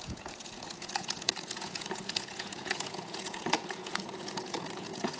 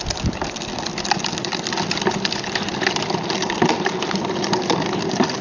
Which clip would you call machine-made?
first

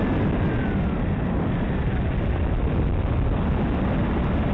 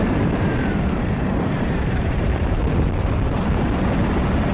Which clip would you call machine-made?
second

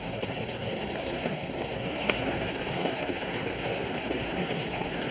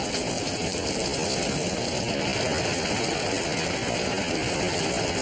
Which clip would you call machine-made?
first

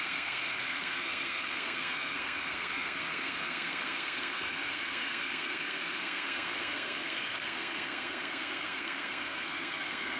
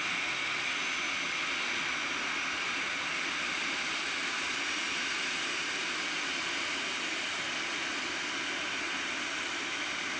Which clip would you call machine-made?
first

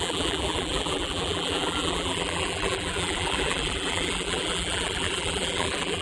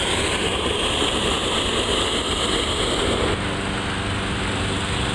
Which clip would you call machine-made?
first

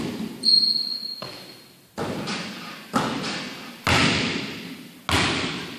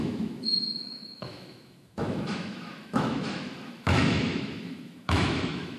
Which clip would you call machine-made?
second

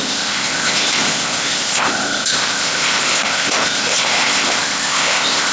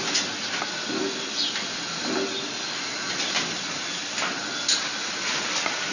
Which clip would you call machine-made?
first